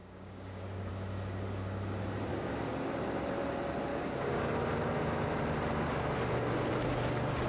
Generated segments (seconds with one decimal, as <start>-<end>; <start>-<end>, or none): 0.0-0.9; 2.3-2.9; 3.9-4.5